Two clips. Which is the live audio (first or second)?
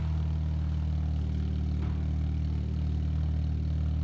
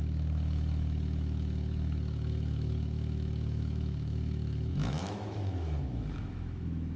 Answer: first